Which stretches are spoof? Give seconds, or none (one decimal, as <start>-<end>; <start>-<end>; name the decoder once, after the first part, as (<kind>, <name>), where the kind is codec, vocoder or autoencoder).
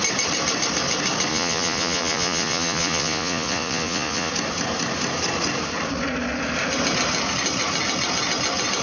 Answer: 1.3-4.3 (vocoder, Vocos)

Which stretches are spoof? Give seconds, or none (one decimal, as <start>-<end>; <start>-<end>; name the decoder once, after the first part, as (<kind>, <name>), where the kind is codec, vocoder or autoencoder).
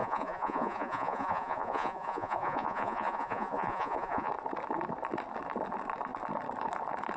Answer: 0.0-4.3 (vocoder, Vocos)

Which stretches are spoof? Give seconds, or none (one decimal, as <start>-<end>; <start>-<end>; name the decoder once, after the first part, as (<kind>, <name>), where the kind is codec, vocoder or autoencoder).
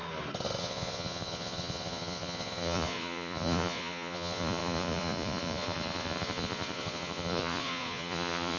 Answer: 0.6-8.6 (vocoder, Vocos)